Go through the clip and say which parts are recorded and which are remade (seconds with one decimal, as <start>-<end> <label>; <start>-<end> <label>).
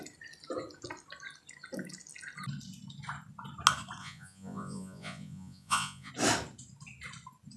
0.0-4.0 recorded; 4.0-6.1 remade; 6.1-7.6 recorded